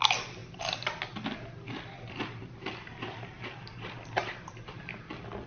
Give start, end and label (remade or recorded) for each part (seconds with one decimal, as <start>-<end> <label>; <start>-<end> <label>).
0.0-2.4 recorded; 2.4-4.8 remade; 4.8-5.5 recorded